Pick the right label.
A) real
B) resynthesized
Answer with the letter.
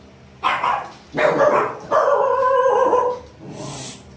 A